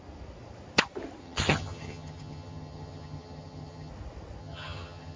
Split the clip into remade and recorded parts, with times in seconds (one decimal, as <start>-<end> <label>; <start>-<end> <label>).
0.0-1.2 recorded; 1.2-3.9 remade; 3.9-4.4 recorded; 4.4-5.2 remade